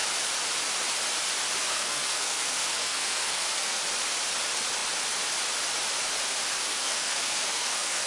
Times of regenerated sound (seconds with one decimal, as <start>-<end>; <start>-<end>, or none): 1.7-3.8; 6.7-8.1